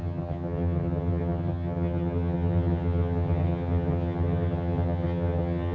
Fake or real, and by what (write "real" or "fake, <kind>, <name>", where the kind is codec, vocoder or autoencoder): fake, vocoder, HiFi-GAN